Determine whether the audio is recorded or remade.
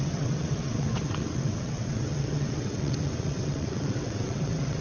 remade